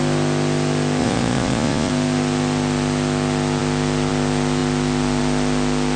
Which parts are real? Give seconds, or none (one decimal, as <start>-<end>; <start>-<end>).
0.0-1.0; 1.9-6.0